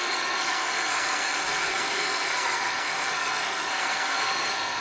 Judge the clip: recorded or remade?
remade